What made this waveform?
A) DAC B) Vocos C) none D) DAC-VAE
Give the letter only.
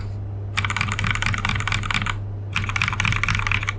C